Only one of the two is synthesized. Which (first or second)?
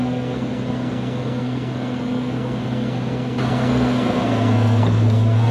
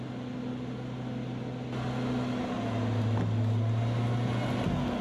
first